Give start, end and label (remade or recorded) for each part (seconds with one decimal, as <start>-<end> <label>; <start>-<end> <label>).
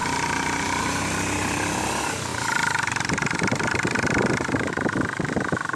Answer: 0.0-2.3 recorded; 2.3-4.7 remade; 4.7-5.8 recorded